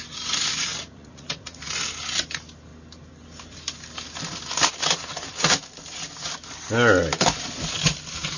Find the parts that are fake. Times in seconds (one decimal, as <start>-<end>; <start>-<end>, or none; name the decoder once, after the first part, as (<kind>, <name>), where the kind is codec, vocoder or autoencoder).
0.7-1.8 (vocoder, Vocos)